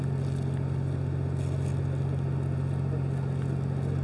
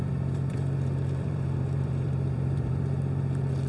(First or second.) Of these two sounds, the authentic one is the first